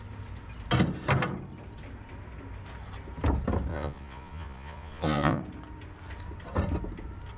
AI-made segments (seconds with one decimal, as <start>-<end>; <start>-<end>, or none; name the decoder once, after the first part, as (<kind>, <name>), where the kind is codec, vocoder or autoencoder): 3.7-5.4 (vocoder, Vocos)